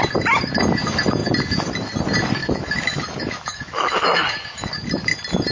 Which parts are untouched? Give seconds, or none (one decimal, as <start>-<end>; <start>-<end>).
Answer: 0.0-2.4; 4.2-5.5